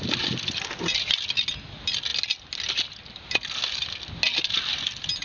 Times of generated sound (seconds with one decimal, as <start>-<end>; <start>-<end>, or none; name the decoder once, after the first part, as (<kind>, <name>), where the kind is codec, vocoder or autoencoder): none